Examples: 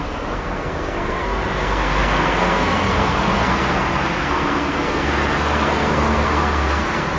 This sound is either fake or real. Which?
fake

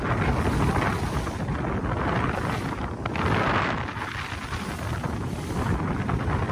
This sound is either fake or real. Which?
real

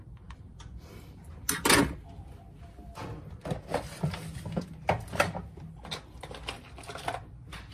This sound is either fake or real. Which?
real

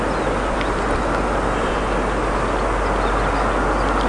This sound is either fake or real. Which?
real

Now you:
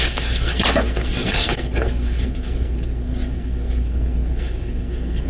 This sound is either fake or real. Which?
fake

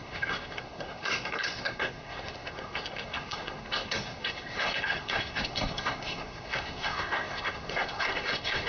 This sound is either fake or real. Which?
fake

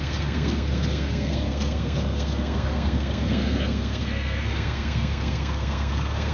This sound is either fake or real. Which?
fake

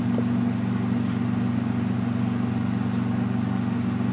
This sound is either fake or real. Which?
real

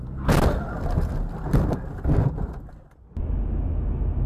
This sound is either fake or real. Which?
real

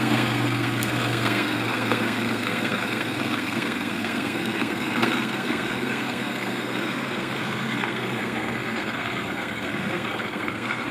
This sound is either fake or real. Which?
fake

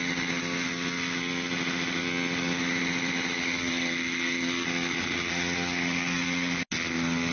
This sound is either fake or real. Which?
real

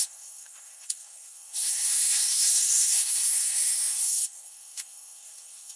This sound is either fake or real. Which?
fake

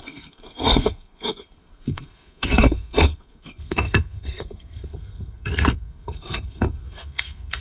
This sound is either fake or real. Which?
fake